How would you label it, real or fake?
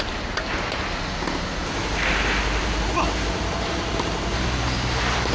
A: real